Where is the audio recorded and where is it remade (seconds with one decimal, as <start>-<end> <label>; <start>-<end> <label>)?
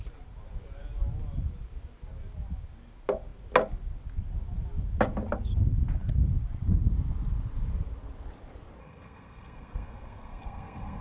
0.0-8.8 recorded; 8.8-11.0 remade